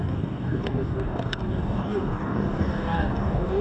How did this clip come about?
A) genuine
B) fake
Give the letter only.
B